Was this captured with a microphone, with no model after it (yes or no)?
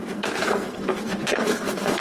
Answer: no